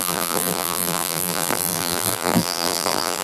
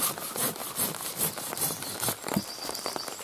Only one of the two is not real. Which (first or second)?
first